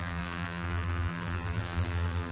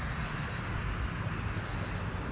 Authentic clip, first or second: second